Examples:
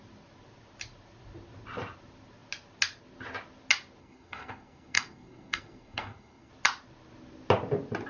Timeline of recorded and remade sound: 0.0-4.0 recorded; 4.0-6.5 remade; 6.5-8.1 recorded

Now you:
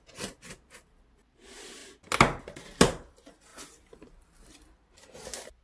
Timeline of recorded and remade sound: 0.0-5.6 recorded

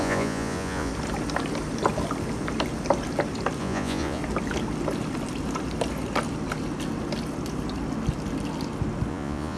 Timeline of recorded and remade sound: 0.0-0.9 remade; 0.9-3.6 recorded; 3.6-4.2 remade; 4.2-9.1 recorded; 9.1-9.6 remade

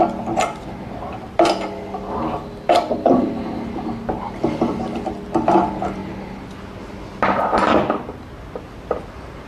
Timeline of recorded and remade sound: 0.0-9.5 recorded

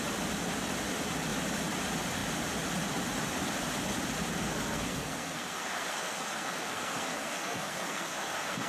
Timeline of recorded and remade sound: 0.0-4.4 recorded; 4.4-8.7 remade

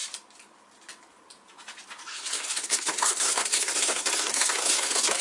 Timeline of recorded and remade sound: 0.0-2.1 recorded; 2.1-5.2 remade

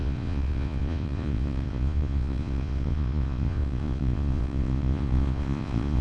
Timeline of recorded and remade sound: 0.0-6.0 remade